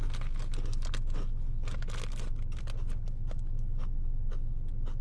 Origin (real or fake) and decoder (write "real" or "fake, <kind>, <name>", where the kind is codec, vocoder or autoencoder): real